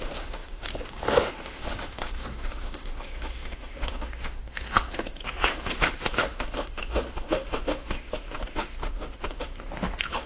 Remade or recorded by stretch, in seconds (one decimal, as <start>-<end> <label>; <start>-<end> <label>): 0.0-10.3 remade